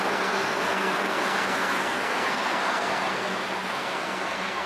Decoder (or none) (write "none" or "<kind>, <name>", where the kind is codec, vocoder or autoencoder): codec, SNAC